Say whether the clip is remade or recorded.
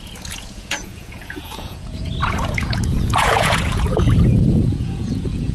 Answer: remade